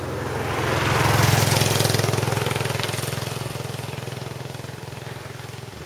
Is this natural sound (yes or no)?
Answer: yes